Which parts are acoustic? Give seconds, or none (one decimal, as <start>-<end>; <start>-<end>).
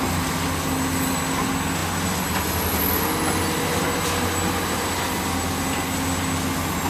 0.0-6.9